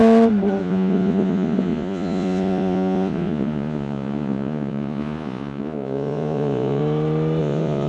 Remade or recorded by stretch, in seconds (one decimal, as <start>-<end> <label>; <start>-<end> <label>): 0.0-0.6 recorded; 0.6-6.8 remade; 6.8-7.4 recorded; 7.4-7.9 remade